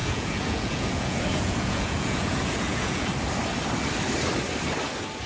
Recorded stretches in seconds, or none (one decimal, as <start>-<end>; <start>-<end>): 3.1-5.3

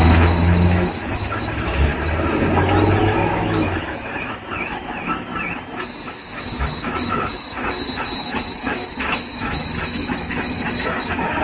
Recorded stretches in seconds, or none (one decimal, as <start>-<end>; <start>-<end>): 1.9-3.0; 5.3-6.1

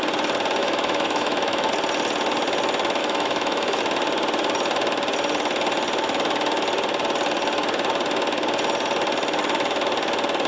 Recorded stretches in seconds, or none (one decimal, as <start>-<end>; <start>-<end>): 0.0-0.6; 1.7-3.0; 3.8-10.5

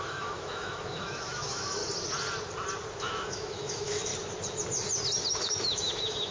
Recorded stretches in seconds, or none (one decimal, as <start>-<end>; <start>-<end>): 1.8-3.0; 4.1-5.3

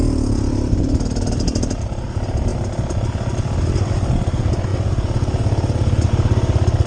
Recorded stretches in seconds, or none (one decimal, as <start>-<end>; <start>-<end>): 0.0-6.9

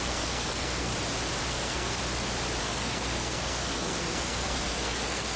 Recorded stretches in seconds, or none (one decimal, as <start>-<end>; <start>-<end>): 0.9-1.5; 2.0-2.6